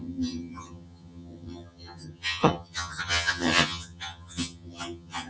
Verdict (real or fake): fake